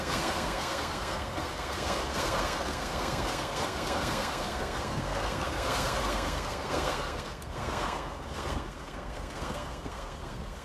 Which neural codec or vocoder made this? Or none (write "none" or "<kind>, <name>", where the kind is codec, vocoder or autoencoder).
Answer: codec, SNAC